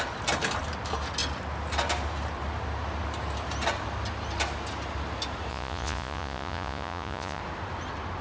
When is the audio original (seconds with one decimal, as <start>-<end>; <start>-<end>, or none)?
0.0-5.5; 7.4-8.2